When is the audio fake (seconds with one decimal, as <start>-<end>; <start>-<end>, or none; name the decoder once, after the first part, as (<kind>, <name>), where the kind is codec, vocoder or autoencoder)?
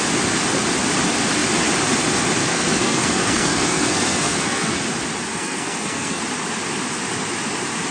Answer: 2.5-4.8 (codec, SNAC); 5.3-6.2